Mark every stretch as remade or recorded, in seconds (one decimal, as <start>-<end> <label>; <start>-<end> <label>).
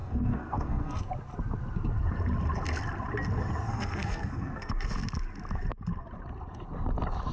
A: 0.0-1.0 remade; 1.0-3.6 recorded; 3.6-4.7 remade; 4.7-7.3 recorded